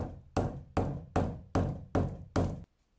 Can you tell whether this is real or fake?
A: real